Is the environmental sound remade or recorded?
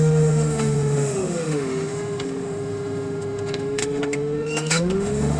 remade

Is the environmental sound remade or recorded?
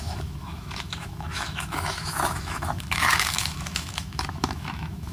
remade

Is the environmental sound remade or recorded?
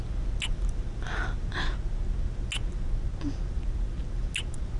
recorded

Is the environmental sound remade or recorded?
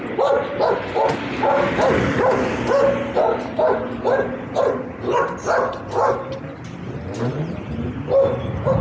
recorded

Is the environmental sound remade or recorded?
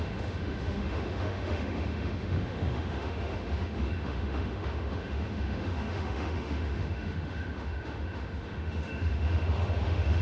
remade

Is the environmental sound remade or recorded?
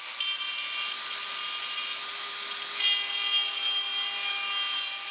recorded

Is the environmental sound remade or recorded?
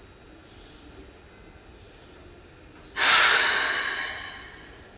recorded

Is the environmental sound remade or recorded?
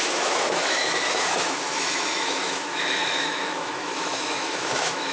remade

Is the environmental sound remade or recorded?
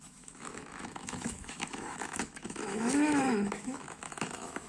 remade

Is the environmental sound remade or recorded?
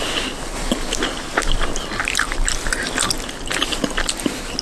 recorded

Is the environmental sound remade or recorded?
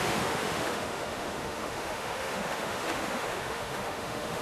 remade